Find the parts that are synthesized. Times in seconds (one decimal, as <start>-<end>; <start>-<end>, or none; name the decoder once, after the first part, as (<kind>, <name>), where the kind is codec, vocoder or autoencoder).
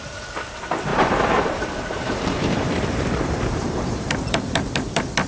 0.9-4.1 (vocoder, BigVGAN v2)